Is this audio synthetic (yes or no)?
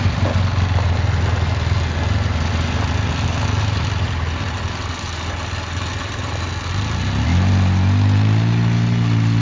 no